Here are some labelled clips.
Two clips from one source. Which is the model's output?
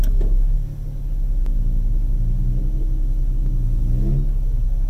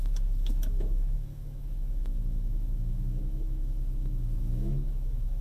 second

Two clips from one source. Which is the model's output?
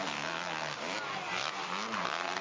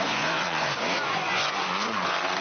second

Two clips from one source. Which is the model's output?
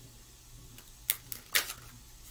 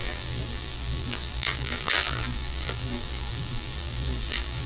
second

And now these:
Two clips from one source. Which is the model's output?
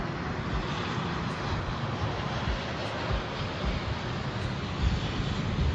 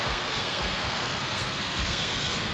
second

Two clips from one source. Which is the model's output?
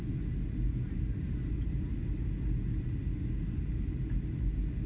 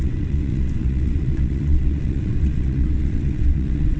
second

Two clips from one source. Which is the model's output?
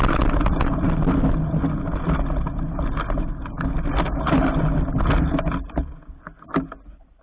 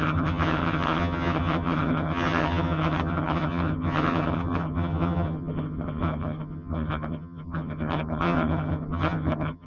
second